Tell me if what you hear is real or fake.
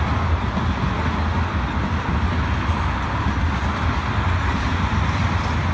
real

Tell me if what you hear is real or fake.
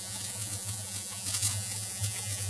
fake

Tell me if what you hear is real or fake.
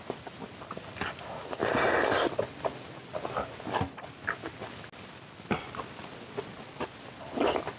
real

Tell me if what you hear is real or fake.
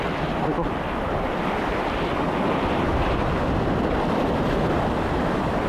real